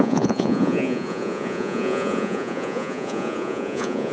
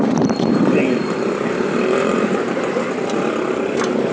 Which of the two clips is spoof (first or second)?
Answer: first